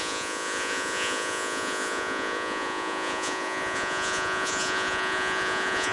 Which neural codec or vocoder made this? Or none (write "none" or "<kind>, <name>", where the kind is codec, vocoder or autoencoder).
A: vocoder, Vocos